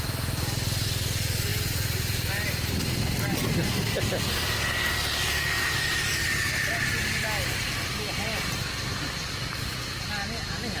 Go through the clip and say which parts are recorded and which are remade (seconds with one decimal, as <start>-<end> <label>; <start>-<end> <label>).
0.0-10.8 recorded